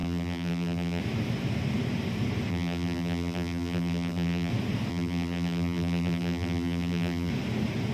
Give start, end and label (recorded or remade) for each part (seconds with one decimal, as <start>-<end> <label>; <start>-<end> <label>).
0.0-1.0 remade; 1.0-2.5 recorded; 2.5-4.5 remade; 4.5-4.9 recorded; 4.9-7.3 remade; 7.3-7.9 recorded